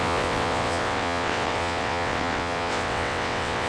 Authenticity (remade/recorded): remade